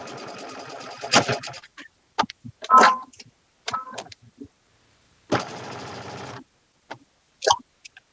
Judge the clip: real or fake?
real